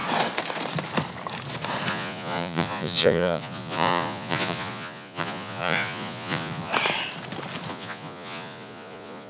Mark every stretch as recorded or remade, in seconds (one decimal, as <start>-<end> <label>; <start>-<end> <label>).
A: 0.0-1.9 recorded; 1.9-6.7 remade; 6.7-7.7 recorded; 7.7-9.3 remade